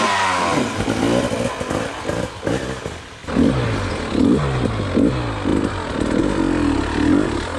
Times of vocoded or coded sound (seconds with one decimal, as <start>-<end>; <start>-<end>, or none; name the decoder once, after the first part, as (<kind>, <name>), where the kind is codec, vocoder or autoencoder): none